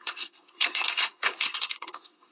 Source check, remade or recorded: remade